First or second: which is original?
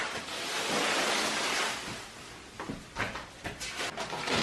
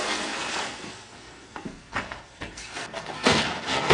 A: first